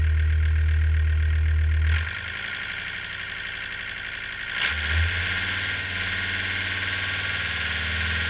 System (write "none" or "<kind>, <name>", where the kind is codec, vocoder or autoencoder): none